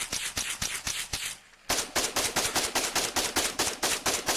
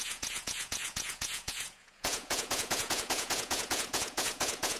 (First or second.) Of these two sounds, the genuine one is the first